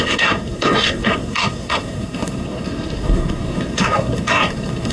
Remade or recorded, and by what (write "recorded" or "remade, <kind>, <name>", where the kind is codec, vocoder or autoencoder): remade, codec, SNAC